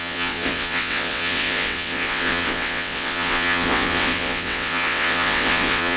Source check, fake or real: fake